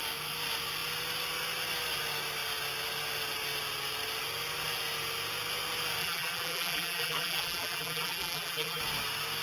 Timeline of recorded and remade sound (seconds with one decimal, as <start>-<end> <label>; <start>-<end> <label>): 0.0-6.0 recorded; 6.0-8.8 remade; 8.8-9.4 recorded

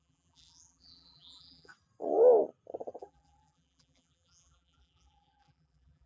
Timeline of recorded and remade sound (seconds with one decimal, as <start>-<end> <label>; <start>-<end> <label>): 0.0-1.7 remade; 1.7-3.0 recorded; 3.0-6.1 remade

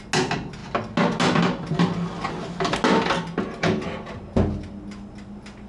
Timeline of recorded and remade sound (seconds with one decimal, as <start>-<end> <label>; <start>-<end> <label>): 0.0-5.7 recorded

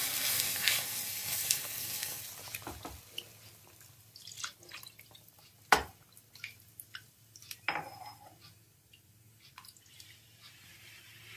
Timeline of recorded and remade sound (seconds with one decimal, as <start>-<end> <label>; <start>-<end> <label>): 0.0-2.2 remade; 2.2-11.4 recorded